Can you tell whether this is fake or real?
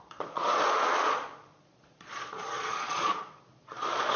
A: fake